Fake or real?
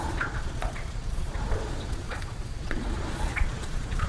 fake